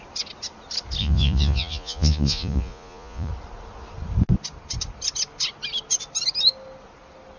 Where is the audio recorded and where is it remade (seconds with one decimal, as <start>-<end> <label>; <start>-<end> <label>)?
0.0-1.0 recorded; 1.0-3.3 remade; 3.3-7.4 recorded